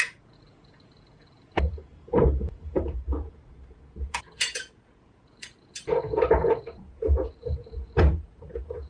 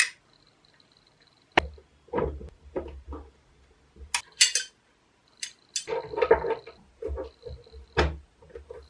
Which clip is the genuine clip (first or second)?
second